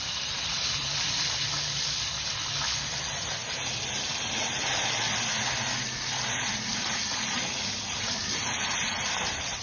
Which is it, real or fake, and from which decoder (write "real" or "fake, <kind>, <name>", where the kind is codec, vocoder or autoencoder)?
real